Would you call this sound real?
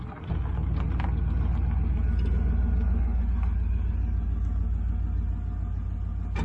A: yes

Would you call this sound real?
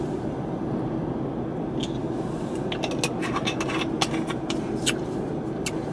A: yes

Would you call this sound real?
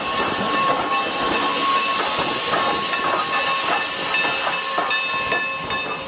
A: yes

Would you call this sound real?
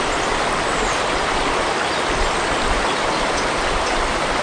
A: yes